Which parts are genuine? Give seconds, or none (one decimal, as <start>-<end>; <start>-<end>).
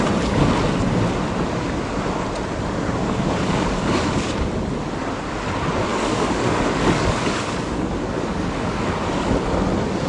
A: 0.0-3.0; 4.3-5.9; 9.4-10.1